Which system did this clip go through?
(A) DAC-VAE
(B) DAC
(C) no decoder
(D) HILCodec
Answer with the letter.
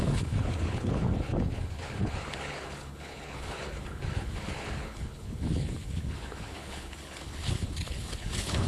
D